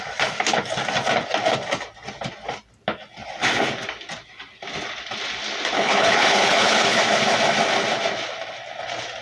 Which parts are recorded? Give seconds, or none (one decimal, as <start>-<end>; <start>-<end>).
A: 0.0-5.7; 7.0-9.2